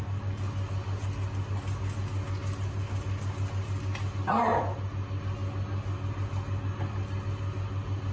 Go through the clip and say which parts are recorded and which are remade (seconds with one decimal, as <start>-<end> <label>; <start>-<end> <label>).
0.0-8.1 recorded